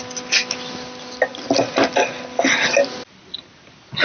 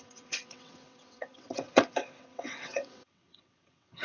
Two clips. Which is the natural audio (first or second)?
first